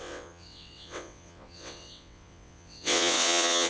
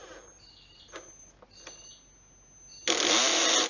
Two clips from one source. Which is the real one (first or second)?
second